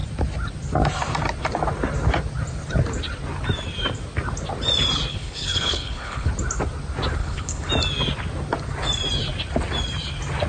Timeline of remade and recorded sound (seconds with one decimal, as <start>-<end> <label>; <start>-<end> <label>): 0.0-5.1 recorded; 5.1-6.3 remade; 6.3-7.2 recorded; 7.2-7.7 remade; 7.7-10.5 recorded